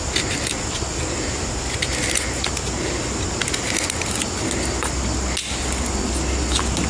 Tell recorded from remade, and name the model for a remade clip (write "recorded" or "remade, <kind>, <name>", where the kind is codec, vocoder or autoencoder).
recorded